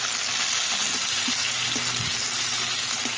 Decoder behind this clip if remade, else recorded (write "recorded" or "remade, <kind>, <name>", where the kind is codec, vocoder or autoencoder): recorded